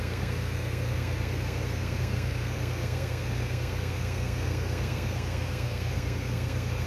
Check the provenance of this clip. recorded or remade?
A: remade